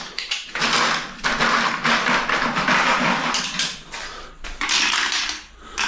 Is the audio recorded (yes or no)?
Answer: yes